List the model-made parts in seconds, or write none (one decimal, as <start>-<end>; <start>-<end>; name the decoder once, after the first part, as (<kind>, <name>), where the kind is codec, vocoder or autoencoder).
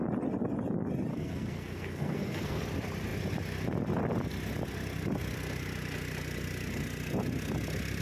1.1-2.6 (codec, SNAC)